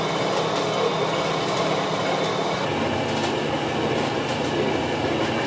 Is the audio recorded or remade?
recorded